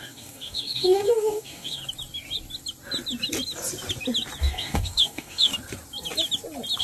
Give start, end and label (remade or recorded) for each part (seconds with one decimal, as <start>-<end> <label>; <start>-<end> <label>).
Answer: 0.0-1.8 remade; 1.8-4.4 recorded; 4.4-5.5 remade; 5.5-6.8 recorded